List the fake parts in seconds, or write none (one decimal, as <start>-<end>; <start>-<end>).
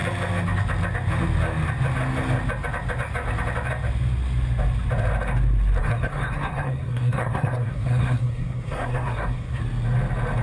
5.8-9.6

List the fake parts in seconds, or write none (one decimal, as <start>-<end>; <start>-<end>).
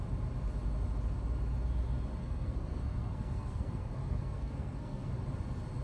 2.2-5.1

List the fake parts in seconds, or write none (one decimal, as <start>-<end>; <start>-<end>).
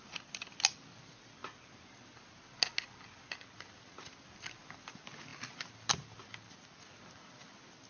none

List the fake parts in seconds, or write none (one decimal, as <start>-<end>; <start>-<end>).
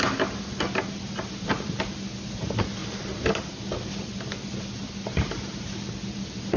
none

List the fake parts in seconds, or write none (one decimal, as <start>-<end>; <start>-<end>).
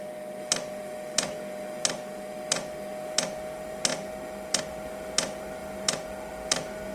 none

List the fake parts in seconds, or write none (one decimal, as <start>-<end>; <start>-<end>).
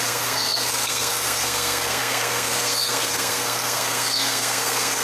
0.0-5.0